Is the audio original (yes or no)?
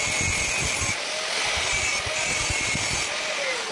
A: yes